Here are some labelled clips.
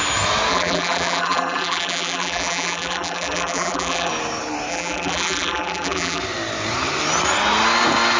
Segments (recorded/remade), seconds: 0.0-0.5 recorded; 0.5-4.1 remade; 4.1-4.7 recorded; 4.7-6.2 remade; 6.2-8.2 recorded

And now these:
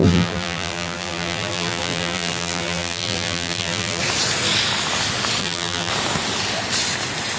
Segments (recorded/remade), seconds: 0.0-4.0 remade; 4.0-5.4 recorded; 5.4-5.9 remade; 5.9-7.4 recorded

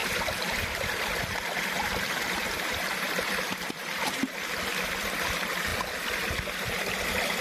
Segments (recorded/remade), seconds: 0.0-4.4 remade; 4.4-7.4 recorded

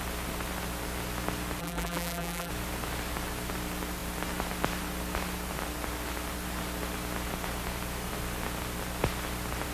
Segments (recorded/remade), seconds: 0.0-1.6 recorded; 1.6-2.5 remade; 2.5-9.7 recorded

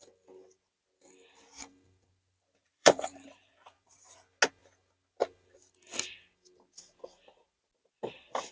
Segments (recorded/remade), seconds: 0.0-2.6 recorded; 2.6-4.1 remade; 4.1-8.5 recorded

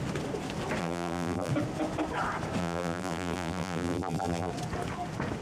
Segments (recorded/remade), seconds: 0.0-0.8 recorded; 0.8-1.5 remade; 1.5-2.6 recorded; 2.6-4.5 remade; 4.5-5.4 recorded